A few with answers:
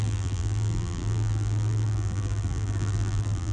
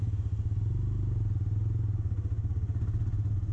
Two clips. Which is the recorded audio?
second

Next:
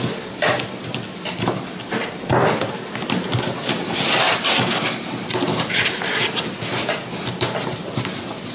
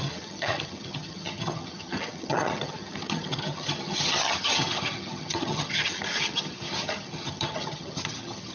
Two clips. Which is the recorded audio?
first